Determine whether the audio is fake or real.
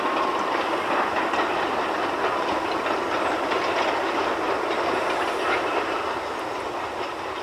real